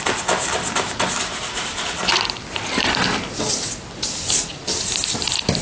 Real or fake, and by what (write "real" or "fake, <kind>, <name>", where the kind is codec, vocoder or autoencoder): real